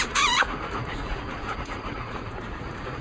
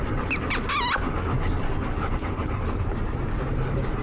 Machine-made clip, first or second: first